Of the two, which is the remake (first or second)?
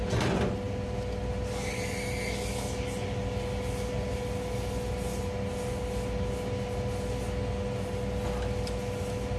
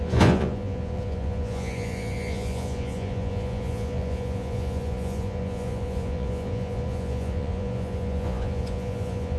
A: second